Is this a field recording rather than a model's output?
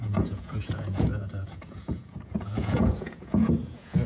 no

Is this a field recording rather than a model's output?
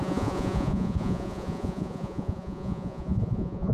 no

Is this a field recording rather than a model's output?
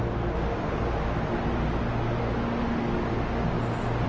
yes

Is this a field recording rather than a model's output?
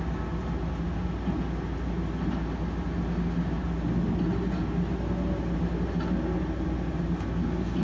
yes